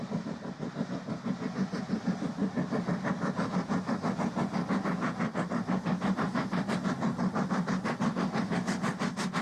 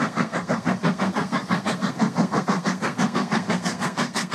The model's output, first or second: second